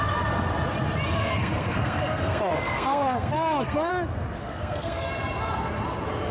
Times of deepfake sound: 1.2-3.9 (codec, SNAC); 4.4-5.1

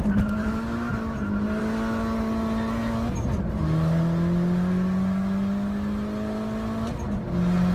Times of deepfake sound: none

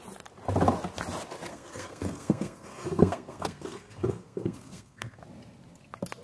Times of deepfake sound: 1.5-5.2 (codec, SNAC)